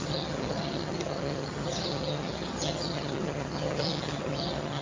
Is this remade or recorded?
remade